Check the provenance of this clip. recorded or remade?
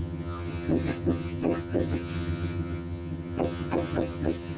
remade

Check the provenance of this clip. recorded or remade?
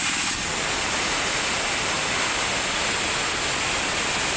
recorded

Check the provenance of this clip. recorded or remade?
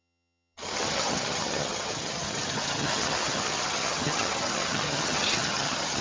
remade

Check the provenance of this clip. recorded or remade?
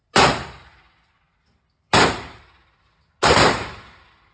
recorded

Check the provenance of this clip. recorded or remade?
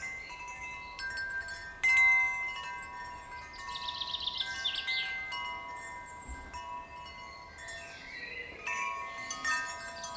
recorded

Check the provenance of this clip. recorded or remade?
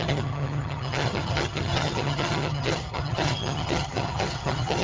remade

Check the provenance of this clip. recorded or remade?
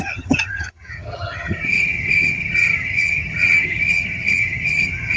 remade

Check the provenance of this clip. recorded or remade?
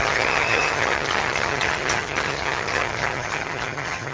remade